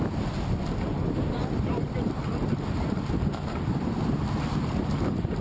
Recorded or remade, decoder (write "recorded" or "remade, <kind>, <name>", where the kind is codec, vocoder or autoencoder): recorded